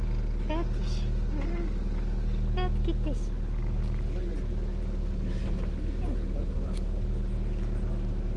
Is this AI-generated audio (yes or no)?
no